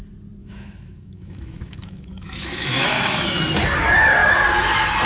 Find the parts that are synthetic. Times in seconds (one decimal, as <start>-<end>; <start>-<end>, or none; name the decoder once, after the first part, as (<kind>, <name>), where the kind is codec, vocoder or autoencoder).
0.4-3.5 (autoencoder, DAC-VAE)